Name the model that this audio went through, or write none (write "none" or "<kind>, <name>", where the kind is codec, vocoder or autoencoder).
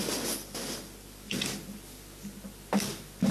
none